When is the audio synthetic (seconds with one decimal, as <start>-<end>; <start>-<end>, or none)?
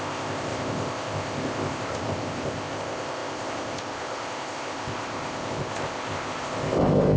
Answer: 0.0-7.2